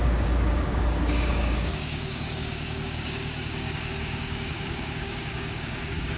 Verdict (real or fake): fake